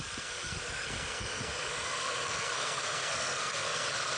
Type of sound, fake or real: fake